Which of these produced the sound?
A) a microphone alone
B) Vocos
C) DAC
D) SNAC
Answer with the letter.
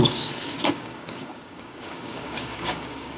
C